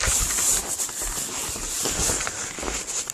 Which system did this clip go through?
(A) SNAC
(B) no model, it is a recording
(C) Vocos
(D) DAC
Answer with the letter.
B